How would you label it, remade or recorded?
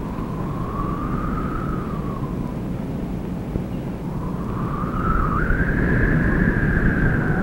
recorded